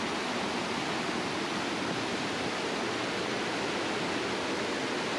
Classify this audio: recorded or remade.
recorded